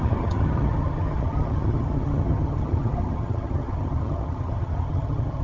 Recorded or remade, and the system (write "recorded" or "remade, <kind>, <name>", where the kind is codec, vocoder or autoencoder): remade, vocoder, HiFi-GAN